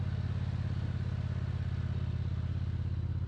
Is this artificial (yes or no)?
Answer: no